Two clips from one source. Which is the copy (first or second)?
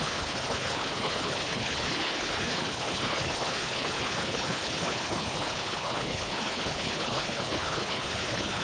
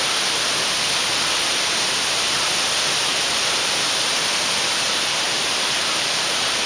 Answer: first